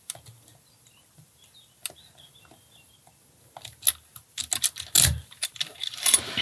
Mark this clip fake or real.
real